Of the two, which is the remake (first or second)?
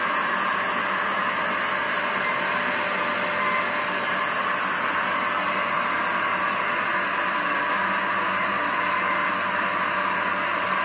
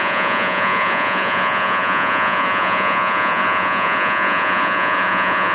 second